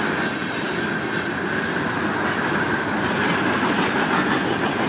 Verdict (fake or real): real